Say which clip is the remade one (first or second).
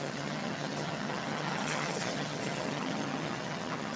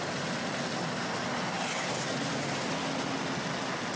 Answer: first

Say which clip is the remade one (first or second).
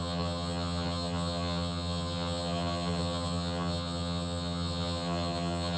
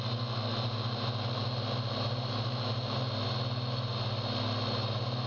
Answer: first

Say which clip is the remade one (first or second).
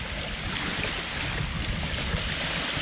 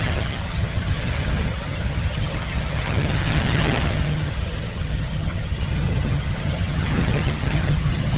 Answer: second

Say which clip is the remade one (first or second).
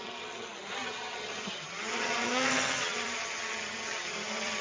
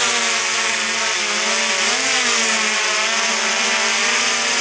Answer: first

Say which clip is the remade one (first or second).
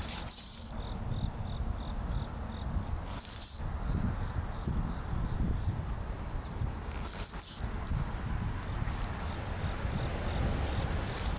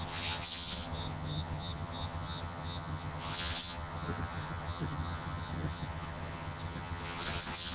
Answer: second